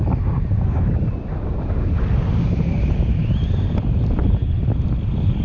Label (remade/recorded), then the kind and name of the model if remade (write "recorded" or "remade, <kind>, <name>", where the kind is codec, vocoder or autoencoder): recorded